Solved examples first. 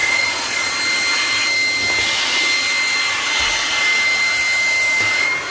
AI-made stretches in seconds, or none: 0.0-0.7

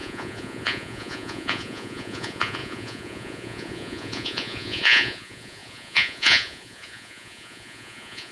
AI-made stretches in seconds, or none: 0.0-8.3